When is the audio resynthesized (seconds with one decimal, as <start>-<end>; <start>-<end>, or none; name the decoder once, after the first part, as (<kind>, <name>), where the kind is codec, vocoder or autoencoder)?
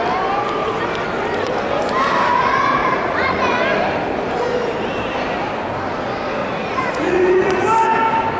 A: 2.8-3.6 (vocoder, Vocos); 6.4-7.6